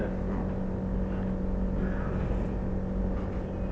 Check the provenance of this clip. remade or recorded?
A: recorded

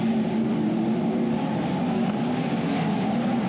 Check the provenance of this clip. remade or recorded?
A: recorded